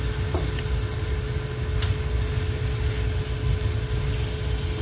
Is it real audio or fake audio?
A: real